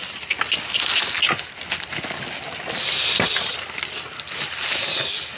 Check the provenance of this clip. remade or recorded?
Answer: recorded